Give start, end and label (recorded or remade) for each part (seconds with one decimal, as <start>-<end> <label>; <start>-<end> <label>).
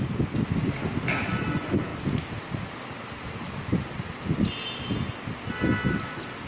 0.0-6.5 recorded